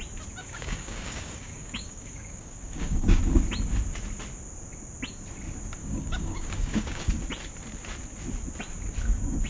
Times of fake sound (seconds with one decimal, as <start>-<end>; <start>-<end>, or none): 0.4-3.2; 5.8-7.1